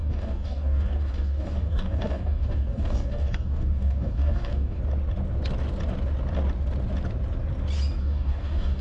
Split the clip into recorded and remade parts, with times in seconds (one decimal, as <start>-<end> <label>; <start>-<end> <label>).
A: 0.0-4.8 remade; 4.8-8.0 recorded; 8.0-8.8 remade